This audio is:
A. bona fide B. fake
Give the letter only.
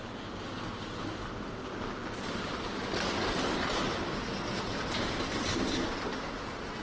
A